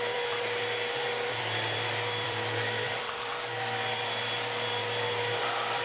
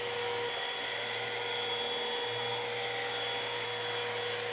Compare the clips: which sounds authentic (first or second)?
second